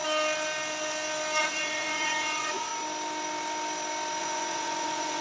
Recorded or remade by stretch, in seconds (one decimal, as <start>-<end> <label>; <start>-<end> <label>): 0.0-1.4 recorded; 1.4-2.7 remade; 2.7-4.2 recorded; 4.2-5.2 remade